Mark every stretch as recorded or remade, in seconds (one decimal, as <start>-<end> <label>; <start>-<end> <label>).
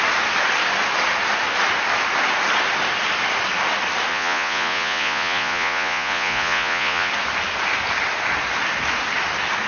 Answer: 0.0-4.1 recorded; 4.1-7.1 remade; 7.1-9.7 recorded